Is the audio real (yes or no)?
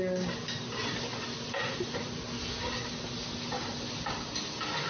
yes